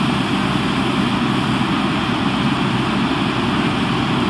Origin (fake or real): real